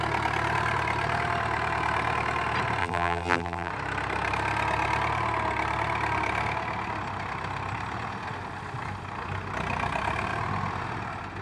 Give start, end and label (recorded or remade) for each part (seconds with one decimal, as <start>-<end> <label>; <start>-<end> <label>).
0.0-2.8 recorded; 2.8-3.7 remade; 3.7-11.4 recorded